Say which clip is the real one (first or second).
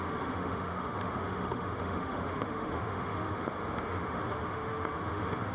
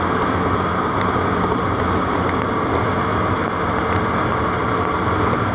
second